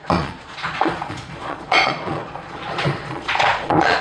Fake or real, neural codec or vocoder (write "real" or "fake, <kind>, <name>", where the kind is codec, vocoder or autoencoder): fake, vocoder, Vocos